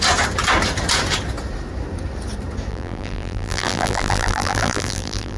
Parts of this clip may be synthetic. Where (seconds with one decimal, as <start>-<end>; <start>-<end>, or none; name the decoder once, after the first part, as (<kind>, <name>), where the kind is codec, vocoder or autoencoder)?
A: 2.7-5.4 (vocoder, BigVGAN v2)